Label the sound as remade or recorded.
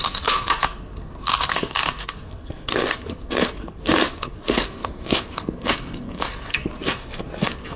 remade